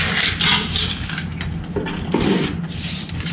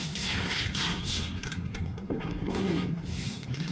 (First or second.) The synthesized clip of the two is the second